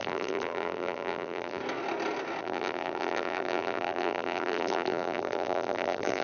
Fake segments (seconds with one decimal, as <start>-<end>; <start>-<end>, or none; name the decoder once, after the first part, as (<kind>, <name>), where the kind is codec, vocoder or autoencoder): 0.0-1.6 (vocoder, BigVGAN v2); 2.4-6.2